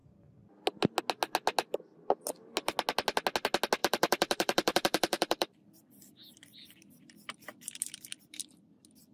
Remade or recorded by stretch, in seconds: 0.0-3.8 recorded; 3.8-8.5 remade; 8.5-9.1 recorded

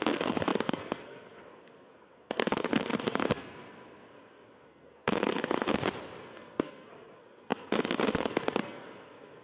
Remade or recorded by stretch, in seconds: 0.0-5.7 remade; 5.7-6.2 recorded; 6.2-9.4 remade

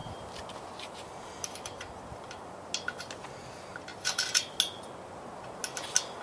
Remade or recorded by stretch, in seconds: 0.0-6.2 recorded